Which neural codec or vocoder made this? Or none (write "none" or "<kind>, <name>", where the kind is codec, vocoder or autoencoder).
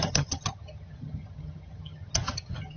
vocoder, HiFi-GAN